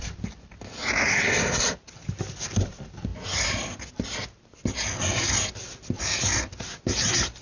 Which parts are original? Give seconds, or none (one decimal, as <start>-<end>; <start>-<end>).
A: 0.0-7.4